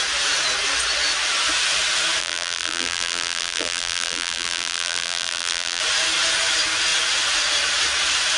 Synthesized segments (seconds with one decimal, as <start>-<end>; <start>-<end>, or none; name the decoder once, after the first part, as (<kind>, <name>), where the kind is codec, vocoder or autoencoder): 2.2-5.8 (vocoder, BigVGAN v2)